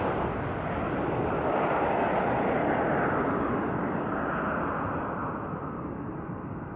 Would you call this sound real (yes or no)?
yes